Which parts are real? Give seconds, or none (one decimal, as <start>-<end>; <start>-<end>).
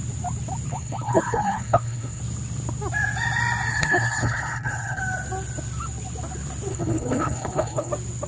0.0-0.7; 2.2-3.7; 5.0-6.7; 7.9-8.3